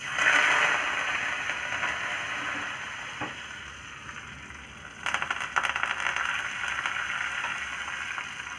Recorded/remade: recorded